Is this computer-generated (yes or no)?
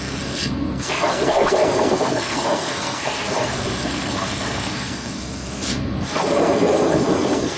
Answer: yes